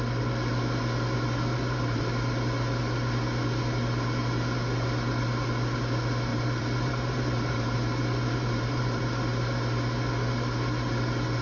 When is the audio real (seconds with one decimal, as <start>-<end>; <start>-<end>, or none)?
0.0-1.5; 2.0-6.3; 9.0-11.4